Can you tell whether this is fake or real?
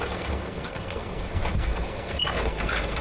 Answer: fake